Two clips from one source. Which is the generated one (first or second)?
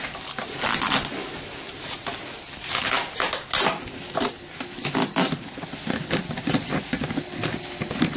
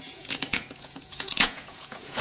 second